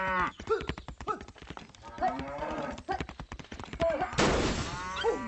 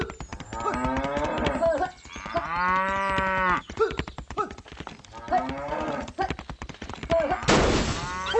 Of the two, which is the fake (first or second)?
first